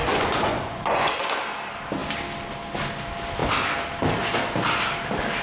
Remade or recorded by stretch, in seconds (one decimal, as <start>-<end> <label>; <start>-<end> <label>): 0.0-1.4 remade; 1.4-5.4 recorded